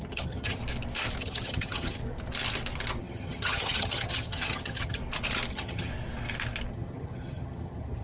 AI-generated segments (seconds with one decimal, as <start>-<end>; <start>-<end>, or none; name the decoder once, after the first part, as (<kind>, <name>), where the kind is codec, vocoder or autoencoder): 0.0-0.6 (vocoder, HiFi-GAN); 1.2-2.0; 3.0-5.0; 5.5-5.9; 6.7-8.0